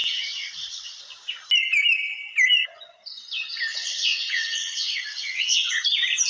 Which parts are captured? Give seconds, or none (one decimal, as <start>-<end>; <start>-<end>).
1.0-3.7; 5.7-6.3

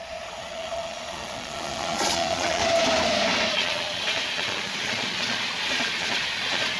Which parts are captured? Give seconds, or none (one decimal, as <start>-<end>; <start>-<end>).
2.6-3.5

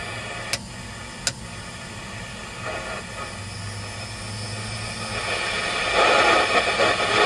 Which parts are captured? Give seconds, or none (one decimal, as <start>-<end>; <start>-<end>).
0.0-7.3

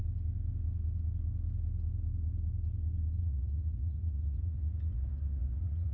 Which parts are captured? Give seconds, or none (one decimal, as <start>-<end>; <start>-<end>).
0.0-3.2

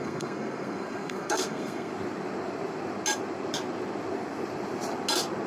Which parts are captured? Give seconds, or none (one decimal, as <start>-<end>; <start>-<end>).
1.9-5.5

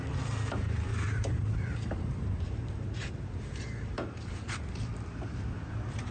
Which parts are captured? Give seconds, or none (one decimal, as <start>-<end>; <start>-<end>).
0.0-0.9; 4.6-6.1

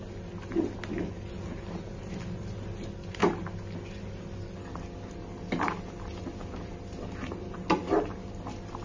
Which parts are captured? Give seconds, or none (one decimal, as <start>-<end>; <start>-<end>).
0.0-8.8